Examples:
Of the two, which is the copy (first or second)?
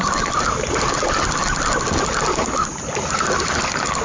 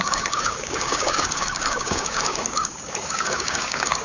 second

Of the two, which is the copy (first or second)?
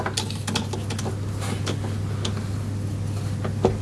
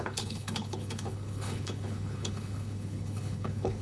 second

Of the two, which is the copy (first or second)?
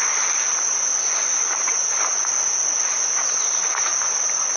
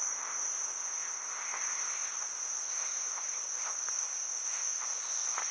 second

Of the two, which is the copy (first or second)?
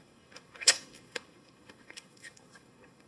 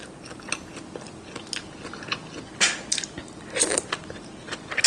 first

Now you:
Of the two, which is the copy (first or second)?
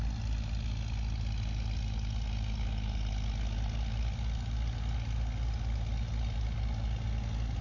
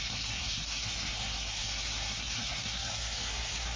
second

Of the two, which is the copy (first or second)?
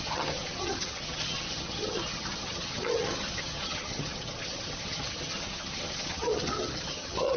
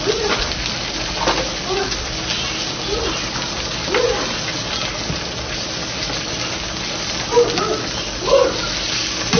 first